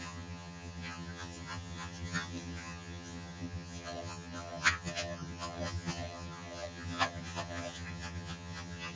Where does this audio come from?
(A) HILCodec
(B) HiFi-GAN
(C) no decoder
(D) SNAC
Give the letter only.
B